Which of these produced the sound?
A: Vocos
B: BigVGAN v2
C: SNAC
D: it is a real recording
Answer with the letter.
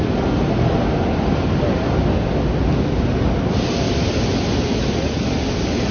D